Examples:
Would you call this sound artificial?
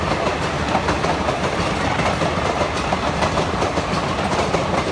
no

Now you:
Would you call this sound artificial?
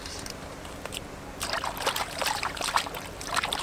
yes